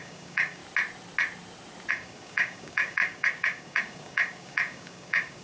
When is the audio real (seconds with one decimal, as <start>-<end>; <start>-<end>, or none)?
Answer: 0.6-1.9